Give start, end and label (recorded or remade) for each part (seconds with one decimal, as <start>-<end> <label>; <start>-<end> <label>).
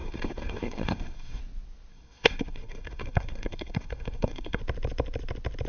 0.0-1.4 remade; 1.4-1.9 recorded; 1.9-4.6 remade; 4.6-5.7 recorded